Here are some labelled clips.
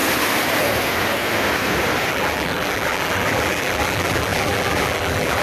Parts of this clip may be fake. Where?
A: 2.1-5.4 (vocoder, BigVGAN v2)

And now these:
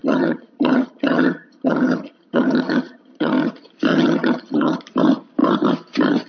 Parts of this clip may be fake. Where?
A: 0.0-3.5 (vocoder, HiFi-GAN); 3.9-4.8

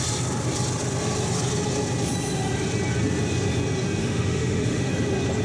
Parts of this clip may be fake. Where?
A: 4.0-4.9 (autoencoder, DAC-VAE)

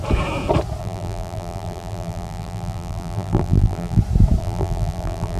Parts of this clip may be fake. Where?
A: 0.8-4.0 (vocoder, BigVGAN v2); 4.4-5.4

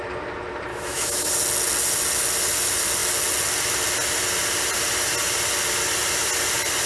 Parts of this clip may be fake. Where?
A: 0.7-1.3 (autoencoder, DAC-VAE)